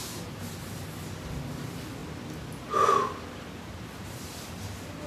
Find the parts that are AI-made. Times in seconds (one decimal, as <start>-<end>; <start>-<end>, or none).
none